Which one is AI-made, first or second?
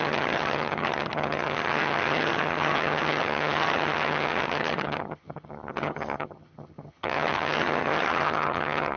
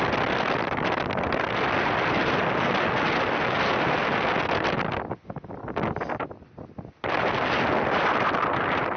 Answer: first